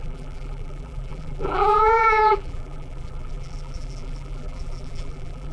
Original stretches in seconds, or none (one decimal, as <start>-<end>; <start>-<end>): none